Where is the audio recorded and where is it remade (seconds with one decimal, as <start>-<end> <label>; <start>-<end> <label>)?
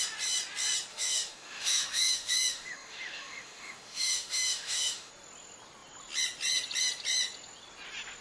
0.0-0.9 recorded; 0.9-5.1 remade; 5.1-8.2 recorded